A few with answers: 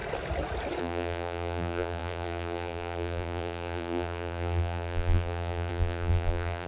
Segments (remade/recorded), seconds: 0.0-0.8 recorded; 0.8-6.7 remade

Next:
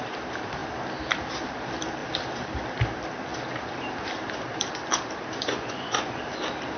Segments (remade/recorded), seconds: 0.0-5.5 recorded; 5.5-6.2 remade; 6.2-6.8 recorded

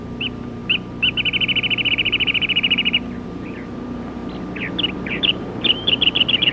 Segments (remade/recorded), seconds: 0.0-0.6 remade; 0.6-1.9 recorded; 1.9-4.2 remade; 4.2-4.9 recorded; 4.9-6.5 remade

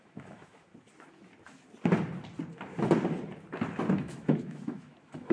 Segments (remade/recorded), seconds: 0.0-0.7 remade; 0.7-3.9 recorded; 3.9-5.3 remade

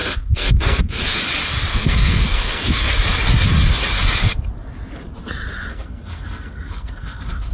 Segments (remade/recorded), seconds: 0.0-1.2 remade; 1.2-1.7 recorded; 1.7-2.9 remade; 2.9-5.7 recorded; 5.7-7.5 remade

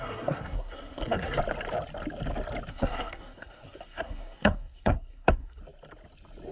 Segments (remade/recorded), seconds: 0.0-1.4 remade; 1.4-2.7 recorded; 2.7-5.6 remade; 5.6-6.5 recorded